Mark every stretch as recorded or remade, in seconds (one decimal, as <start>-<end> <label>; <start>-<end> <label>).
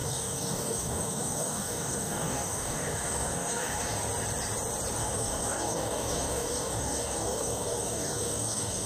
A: 0.0-4.0 remade; 4.0-5.0 recorded; 5.0-8.9 remade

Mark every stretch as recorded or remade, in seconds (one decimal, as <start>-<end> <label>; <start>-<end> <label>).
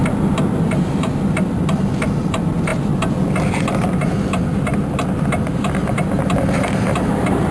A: 0.0-7.5 recorded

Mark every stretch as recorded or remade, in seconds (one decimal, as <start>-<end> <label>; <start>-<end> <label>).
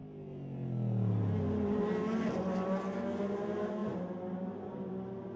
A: 0.0-5.4 recorded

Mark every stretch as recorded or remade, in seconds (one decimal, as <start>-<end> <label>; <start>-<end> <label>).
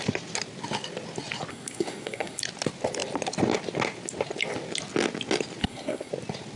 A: 0.0-1.5 recorded; 1.5-2.4 remade; 2.4-5.6 recorded; 5.6-6.1 remade; 6.1-6.6 recorded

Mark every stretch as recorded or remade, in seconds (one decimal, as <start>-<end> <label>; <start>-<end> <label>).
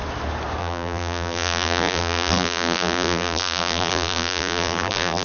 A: 0.0-0.6 recorded; 0.6-5.2 remade